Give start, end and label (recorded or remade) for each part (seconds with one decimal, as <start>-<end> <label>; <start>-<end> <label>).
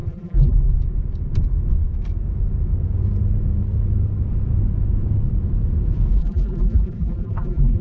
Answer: 0.0-0.7 remade; 0.7-6.2 recorded; 6.2-7.8 remade